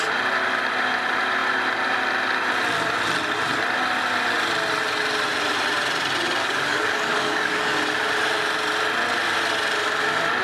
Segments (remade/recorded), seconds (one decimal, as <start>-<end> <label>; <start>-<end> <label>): 0.0-6.4 recorded; 6.4-7.8 remade; 7.8-10.4 recorded